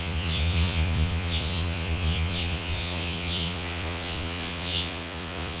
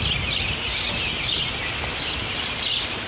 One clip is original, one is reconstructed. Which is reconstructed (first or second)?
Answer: first